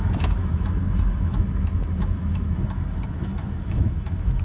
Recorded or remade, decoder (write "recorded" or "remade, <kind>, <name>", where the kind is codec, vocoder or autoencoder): remade, autoencoder, DAC-VAE